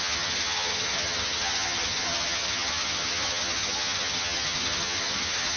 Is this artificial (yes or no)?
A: yes